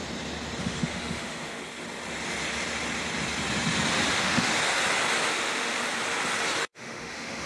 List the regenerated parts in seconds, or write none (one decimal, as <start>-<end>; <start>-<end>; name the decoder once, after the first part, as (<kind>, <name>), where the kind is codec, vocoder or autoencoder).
0.6-1.6 (autoencoder, DAC-VAE); 4.1-4.5; 5.3-5.8; 6.6-7.5